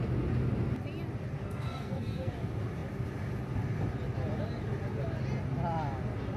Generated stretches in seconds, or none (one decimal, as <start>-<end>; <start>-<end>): 1.4-2.3

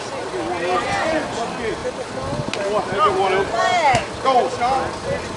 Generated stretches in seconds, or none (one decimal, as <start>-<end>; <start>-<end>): none

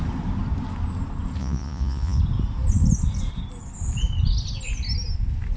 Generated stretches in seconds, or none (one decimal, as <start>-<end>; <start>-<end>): 1.4-2.2